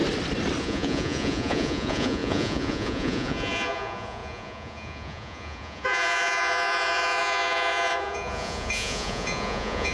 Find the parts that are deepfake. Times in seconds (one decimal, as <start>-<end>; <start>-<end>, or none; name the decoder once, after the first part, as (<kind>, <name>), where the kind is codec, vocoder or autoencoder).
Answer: 0.6-9.9 (vocoder, Vocos)